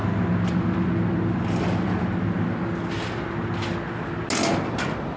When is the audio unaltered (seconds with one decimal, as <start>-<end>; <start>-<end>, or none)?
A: 0.0-5.2